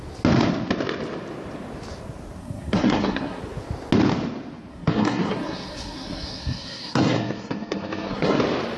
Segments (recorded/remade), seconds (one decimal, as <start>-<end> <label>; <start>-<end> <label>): 0.0-2.4 recorded; 2.4-3.4 remade; 3.4-4.7 recorded; 4.7-8.4 remade; 8.4-8.8 recorded